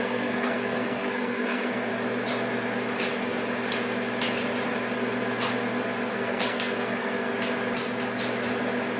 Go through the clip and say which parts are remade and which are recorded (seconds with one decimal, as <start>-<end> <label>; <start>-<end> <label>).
0.0-1.9 remade; 1.9-6.1 recorded; 6.1-7.3 remade; 7.3-9.0 recorded